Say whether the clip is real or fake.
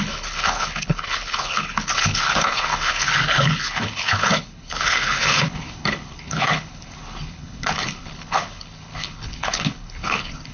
fake